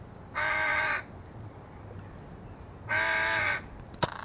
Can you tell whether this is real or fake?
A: real